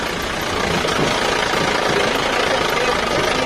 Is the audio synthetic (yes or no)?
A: no